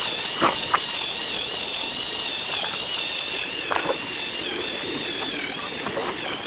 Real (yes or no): yes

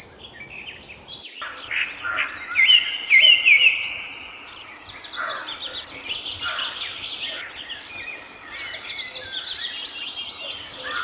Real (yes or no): yes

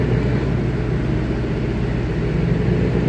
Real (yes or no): yes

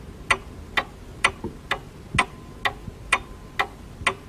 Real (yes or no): yes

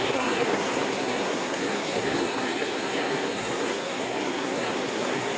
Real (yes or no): no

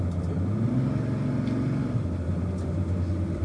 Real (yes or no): yes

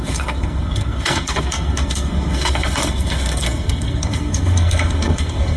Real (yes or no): no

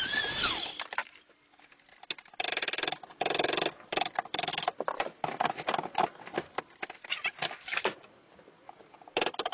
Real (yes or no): yes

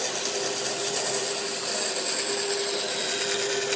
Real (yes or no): yes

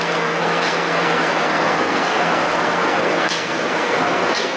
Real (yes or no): no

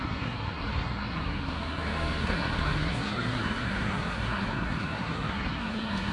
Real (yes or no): no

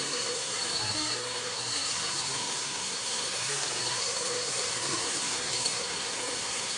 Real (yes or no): no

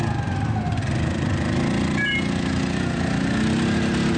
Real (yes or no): yes